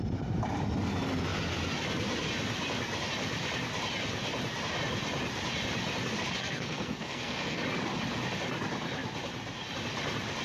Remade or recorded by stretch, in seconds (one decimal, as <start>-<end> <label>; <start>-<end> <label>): 0.0-6.4 recorded; 6.4-7.6 remade; 7.6-10.4 recorded